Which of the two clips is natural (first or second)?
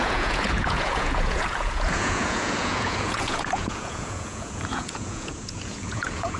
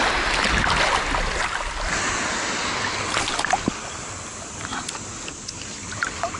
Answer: second